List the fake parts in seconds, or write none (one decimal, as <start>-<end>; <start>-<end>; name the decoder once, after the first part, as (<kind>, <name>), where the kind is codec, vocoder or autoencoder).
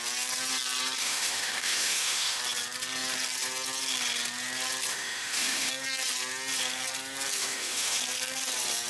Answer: 1.0-2.4 (autoencoder, DAC-VAE); 4.9-5.7; 7.4-8.0